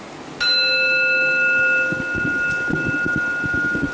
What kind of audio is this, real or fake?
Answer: real